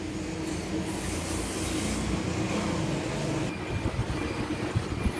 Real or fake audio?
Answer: real